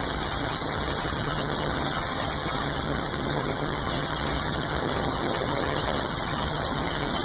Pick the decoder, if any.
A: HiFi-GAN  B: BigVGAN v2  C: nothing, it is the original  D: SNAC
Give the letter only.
A